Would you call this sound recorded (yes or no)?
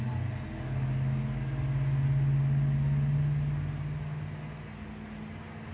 yes